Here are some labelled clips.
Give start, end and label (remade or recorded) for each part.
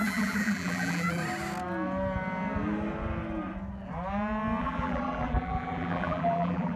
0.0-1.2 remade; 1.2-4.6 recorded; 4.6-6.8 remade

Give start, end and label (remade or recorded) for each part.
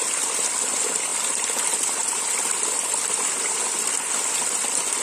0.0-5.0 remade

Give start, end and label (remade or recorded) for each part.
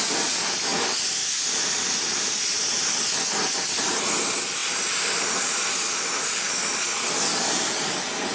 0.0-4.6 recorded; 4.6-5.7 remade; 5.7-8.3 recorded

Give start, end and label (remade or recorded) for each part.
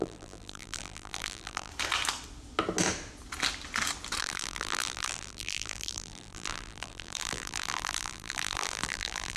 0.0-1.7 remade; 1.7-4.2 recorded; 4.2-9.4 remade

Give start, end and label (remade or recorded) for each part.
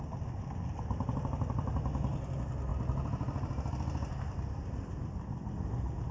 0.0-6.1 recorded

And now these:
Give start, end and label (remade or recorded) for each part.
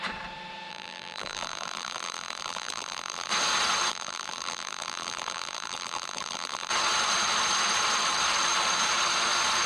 0.0-0.7 recorded; 0.7-3.3 remade; 3.3-3.9 recorded; 3.9-6.7 remade; 6.7-9.7 recorded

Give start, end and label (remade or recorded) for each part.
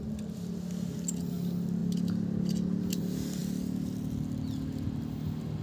0.0-5.6 recorded